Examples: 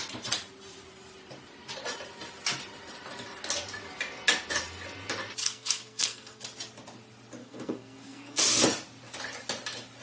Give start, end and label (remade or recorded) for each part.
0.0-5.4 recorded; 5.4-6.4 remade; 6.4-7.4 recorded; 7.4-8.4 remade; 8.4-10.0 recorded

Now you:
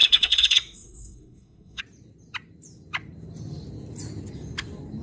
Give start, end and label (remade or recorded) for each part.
0.0-1.8 remade; 1.8-5.0 recorded

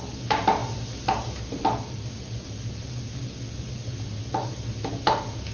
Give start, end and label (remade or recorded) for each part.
0.0-5.5 recorded